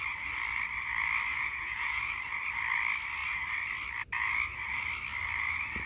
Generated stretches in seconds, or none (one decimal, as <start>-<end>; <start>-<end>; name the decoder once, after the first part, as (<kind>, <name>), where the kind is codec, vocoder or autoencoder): 1.3-2.1 (vocoder, Vocos)